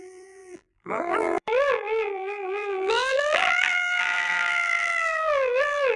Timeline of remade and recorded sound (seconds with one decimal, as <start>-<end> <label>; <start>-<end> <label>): 0.0-6.0 remade